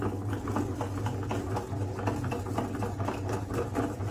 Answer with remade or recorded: recorded